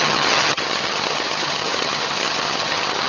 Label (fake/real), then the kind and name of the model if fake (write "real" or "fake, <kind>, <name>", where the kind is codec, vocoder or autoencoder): fake, vocoder, HiFi-GAN